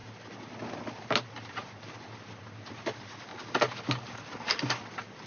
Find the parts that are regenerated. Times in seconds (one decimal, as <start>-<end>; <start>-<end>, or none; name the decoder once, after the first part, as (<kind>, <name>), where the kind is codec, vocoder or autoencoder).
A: none